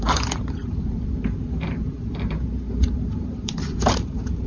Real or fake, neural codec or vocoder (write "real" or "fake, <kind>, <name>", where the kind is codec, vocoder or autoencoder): fake, vocoder, BigVGAN v2